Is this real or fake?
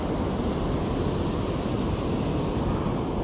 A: real